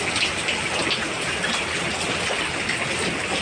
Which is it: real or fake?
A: real